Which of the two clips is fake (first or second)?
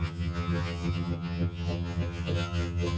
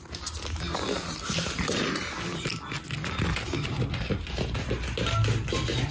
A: first